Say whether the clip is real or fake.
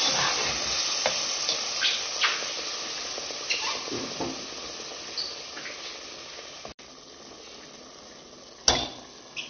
real